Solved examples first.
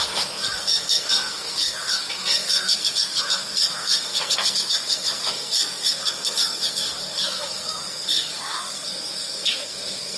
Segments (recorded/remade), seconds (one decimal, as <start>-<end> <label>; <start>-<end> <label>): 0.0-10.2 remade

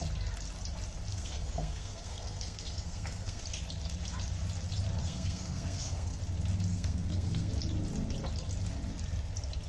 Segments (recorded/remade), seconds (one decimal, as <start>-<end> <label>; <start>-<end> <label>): 0.0-1.1 recorded; 1.1-3.4 remade; 3.4-5.0 recorded; 5.0-6.2 remade; 6.2-6.7 recorded; 6.7-7.5 remade; 7.5-9.7 recorded

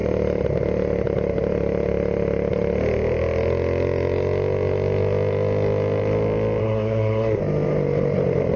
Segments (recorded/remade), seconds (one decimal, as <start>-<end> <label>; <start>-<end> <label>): 0.0-6.6 recorded; 6.6-7.4 remade; 7.4-8.6 recorded

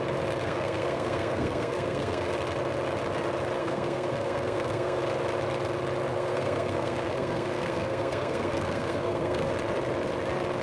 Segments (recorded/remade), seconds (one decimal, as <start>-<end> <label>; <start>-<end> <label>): 0.0-0.4 recorded; 0.4-2.3 remade; 2.3-3.6 recorded; 3.6-5.0 remade; 5.0-6.1 recorded; 6.1-9.5 remade; 9.5-10.6 recorded

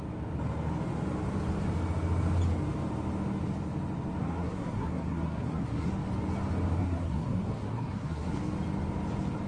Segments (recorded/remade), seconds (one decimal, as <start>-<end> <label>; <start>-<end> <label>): 0.0-4.2 recorded; 4.2-5.9 remade; 5.9-6.8 recorded; 6.8-8.4 remade; 8.4-9.5 recorded